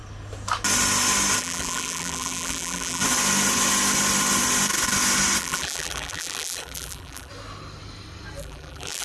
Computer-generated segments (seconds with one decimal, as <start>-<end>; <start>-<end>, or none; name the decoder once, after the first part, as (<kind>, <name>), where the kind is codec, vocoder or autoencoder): 1.4-3.0 (vocoder, BigVGAN v2); 5.4-7.3; 8.4-9.0